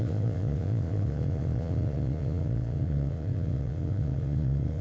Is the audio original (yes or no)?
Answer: no